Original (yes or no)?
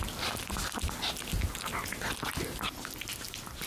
yes